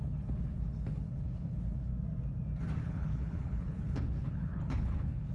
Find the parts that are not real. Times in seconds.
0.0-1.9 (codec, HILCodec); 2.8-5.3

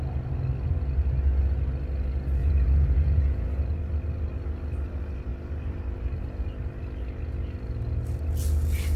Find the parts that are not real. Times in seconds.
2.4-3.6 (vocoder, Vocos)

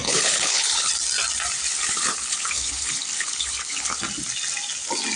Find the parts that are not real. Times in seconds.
0.0-0.9 (codec, HILCodec); 1.7-4.0